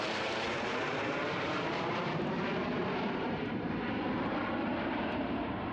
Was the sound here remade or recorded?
remade